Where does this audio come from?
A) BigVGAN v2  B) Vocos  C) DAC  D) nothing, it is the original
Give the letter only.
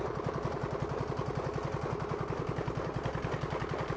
D